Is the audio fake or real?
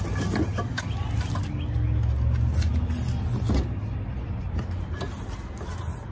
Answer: real